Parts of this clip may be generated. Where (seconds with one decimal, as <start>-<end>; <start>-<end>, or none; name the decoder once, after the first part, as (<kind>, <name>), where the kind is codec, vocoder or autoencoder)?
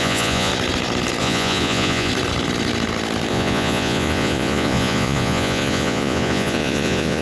0.0-0.5 (vocoder, Vocos); 1.2-2.1; 3.3-7.2